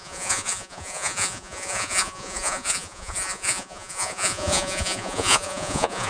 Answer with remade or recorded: remade